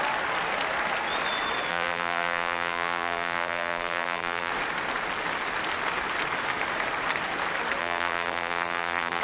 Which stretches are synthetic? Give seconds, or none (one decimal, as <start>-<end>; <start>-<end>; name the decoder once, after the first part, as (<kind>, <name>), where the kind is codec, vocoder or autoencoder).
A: 1.7-4.5 (vocoder, BigVGAN v2); 7.8-9.2